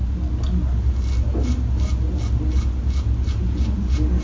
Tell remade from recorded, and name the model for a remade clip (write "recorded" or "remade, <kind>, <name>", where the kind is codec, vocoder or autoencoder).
recorded